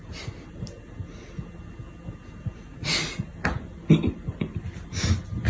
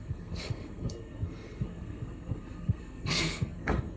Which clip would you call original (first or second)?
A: first